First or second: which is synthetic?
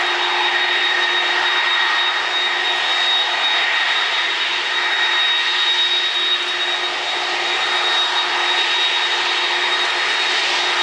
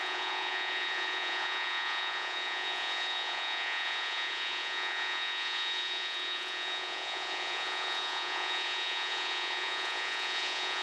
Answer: second